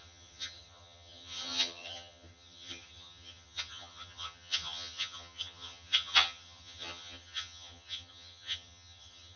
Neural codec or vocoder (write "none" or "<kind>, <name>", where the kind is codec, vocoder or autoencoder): vocoder, HiFi-GAN